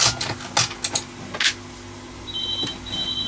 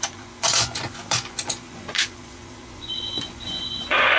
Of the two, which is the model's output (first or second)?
second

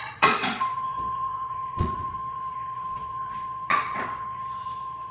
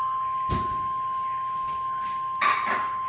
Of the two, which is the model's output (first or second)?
first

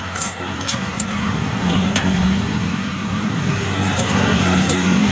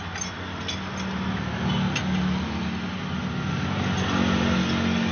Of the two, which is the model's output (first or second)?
first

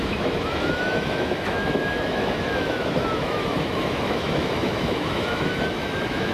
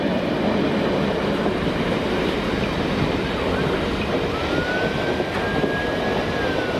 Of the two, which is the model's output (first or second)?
first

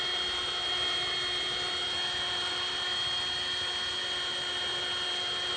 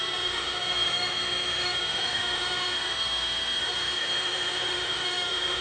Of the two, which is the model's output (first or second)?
second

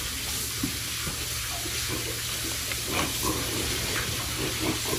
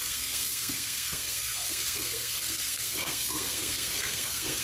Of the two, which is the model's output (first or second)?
second